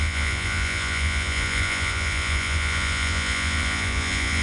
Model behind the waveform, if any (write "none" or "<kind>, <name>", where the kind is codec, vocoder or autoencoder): vocoder, Vocos